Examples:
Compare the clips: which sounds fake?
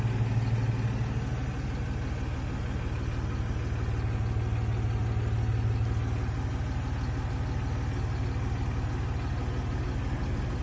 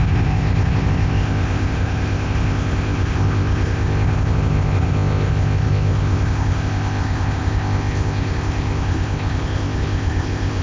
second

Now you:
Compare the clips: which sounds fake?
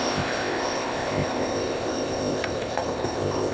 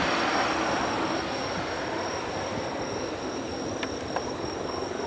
first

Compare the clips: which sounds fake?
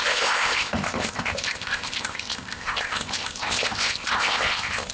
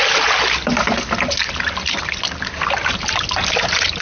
first